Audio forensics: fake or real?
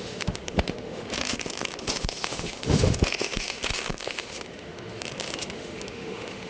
fake